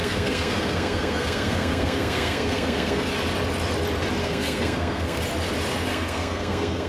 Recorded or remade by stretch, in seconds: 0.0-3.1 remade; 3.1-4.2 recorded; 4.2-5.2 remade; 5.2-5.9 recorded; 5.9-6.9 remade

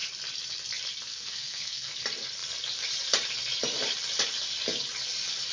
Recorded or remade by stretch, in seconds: 0.0-1.1 recorded; 1.1-1.9 remade; 1.9-5.5 recorded

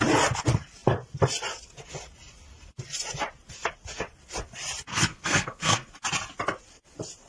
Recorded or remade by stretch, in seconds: 0.0-4.9 recorded; 4.9-5.9 remade; 5.9-7.3 recorded

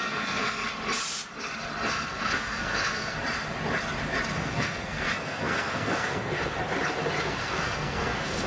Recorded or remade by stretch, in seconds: 0.0-0.7 remade; 0.7-1.9 recorded; 1.9-3.2 remade; 3.2-4.4 recorded; 4.4-6.6 remade; 6.6-7.2 recorded; 7.2-8.5 remade

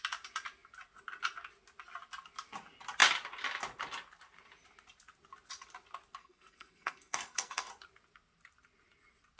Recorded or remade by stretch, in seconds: 0.0-6.2 recorded; 6.2-7.7 remade; 7.7-9.4 recorded

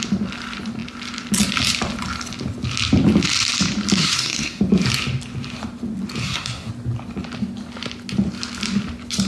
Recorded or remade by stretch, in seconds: 0.0-4.0 recorded; 4.0-4.6 remade; 4.6-6.2 recorded; 6.2-6.7 remade; 6.7-9.3 recorded

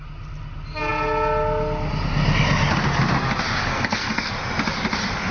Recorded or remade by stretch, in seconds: 0.0-3.6 recorded; 3.6-4.3 remade; 4.3-5.3 recorded